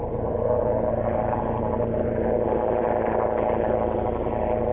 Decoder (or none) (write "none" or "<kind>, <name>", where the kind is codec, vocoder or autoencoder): none